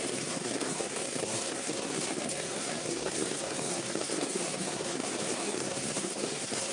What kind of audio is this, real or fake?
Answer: fake